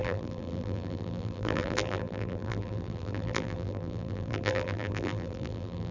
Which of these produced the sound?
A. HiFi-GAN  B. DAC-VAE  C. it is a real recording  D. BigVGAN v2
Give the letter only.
D